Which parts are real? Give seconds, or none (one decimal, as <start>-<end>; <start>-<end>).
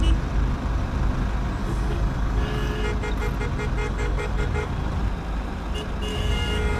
0.0-1.6; 2.8-3.8; 4.7-6.1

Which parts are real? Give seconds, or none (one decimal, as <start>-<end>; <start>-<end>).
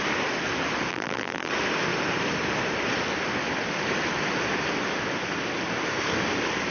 0.0-0.9; 1.5-6.7